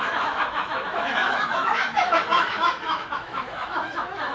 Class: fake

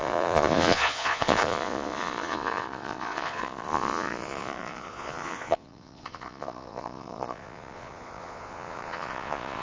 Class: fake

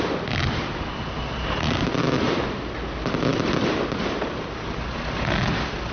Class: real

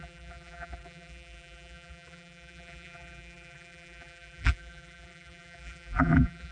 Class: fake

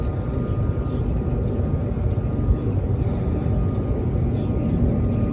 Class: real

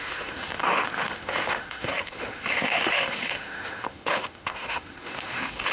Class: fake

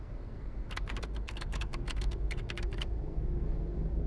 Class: fake